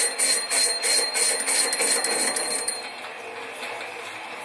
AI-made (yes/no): no